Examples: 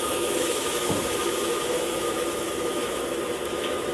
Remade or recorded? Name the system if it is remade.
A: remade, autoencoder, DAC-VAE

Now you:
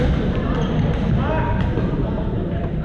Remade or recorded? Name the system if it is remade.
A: recorded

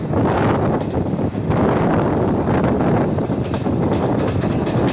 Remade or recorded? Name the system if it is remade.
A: recorded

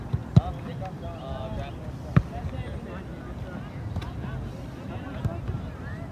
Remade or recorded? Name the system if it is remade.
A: recorded